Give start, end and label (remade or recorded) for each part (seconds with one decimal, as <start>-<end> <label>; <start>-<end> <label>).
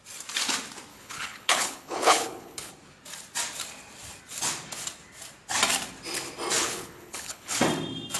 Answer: 0.0-0.9 recorded; 0.9-2.7 remade; 2.7-6.6 recorded; 6.6-7.6 remade; 7.6-8.2 recorded